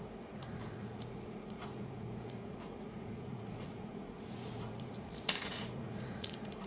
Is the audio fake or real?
fake